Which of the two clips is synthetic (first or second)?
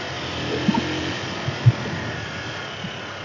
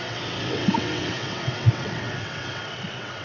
second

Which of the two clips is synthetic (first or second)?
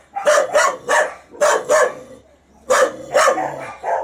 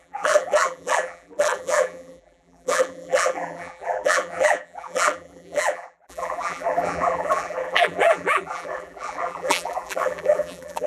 second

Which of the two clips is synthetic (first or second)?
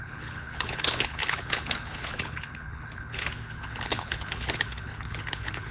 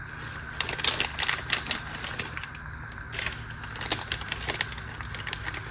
first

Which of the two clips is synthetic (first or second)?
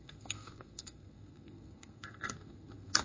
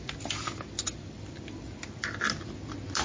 first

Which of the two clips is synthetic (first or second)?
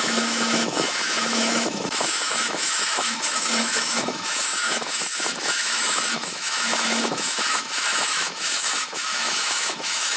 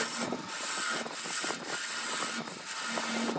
first